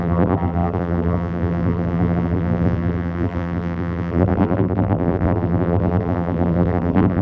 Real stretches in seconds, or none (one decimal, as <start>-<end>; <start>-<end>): none